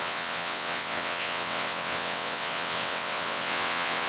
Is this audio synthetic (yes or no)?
yes